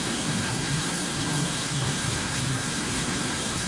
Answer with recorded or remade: remade